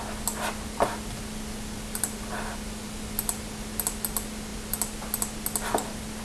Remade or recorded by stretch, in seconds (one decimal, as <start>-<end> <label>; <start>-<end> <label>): 0.0-6.2 recorded